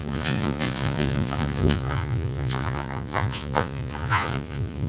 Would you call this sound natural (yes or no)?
no